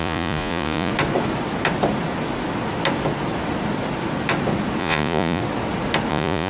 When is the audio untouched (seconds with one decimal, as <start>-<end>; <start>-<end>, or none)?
0.9-4.8; 5.4-6.1